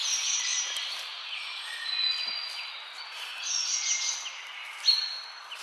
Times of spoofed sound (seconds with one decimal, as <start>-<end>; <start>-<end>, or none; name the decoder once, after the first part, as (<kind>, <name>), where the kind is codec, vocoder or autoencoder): none